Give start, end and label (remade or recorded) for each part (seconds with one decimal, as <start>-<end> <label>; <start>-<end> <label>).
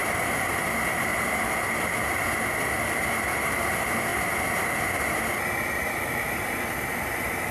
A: 0.0-1.1 remade; 1.1-2.2 recorded; 2.2-4.1 remade; 4.1-6.3 recorded; 6.3-7.5 remade